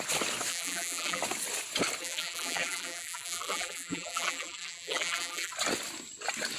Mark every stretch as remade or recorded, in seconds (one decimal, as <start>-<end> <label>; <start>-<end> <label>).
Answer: 0.0-0.5 recorded; 0.5-1.2 remade; 1.2-2.0 recorded; 2.0-5.5 remade; 5.5-6.6 recorded